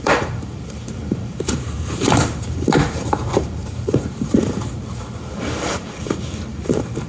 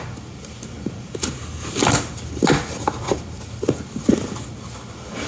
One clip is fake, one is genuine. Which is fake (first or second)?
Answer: first